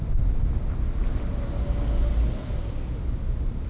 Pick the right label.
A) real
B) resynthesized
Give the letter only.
A